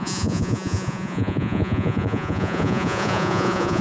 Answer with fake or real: fake